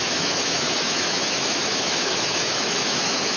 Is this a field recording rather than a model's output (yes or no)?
no